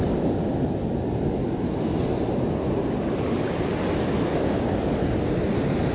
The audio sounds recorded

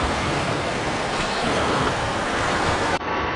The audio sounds remade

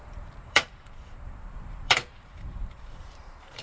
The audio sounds remade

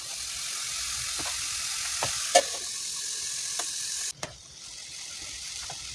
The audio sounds recorded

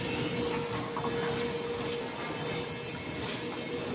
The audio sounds recorded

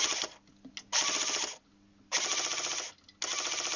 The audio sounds recorded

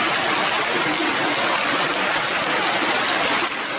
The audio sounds recorded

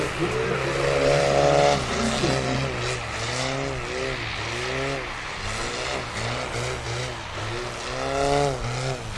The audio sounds recorded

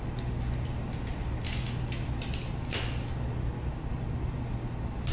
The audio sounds recorded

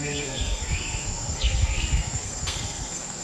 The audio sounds remade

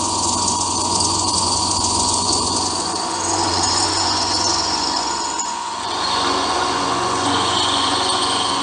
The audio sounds remade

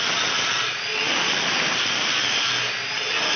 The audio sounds recorded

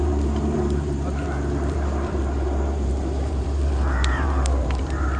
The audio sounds remade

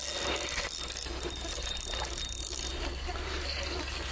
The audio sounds recorded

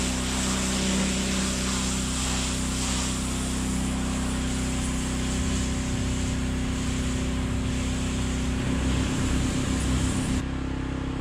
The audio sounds recorded